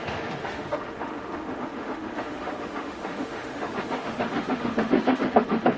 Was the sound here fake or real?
fake